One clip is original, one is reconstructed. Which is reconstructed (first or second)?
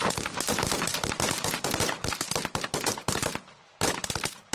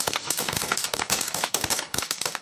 second